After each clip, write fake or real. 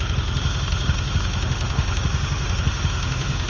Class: fake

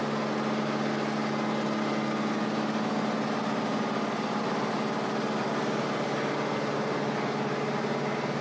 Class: real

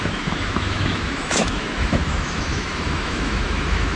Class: fake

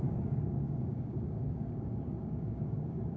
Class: fake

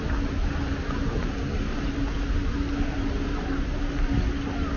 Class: real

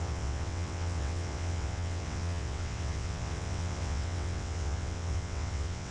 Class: fake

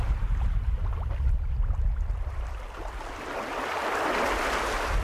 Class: real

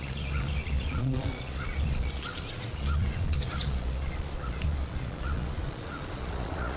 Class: fake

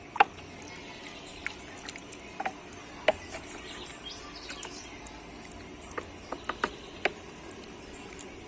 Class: real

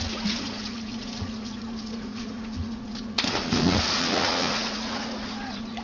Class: fake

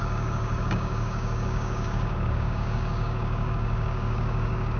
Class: fake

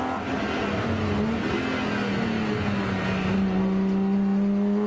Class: real